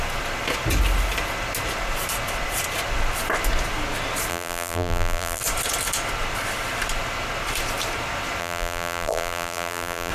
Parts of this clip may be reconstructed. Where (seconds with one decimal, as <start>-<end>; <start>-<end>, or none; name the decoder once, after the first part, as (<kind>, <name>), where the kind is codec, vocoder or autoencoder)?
4.3-5.4 (vocoder, BigVGAN v2); 8.4-10.1